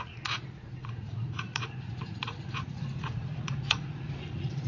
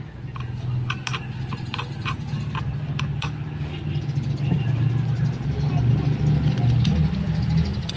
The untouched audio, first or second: second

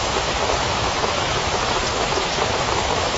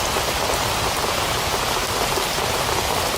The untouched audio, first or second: second